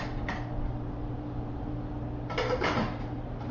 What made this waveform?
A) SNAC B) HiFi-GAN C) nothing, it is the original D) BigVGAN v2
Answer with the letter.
C